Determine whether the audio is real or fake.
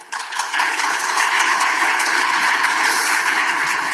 fake